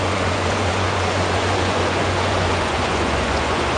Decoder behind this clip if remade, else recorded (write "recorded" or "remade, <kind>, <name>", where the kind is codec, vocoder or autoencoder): remade, vocoder, Vocos